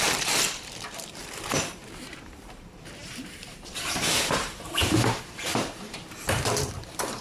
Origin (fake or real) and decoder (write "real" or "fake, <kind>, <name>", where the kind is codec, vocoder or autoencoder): fake, vocoder, BigVGAN v2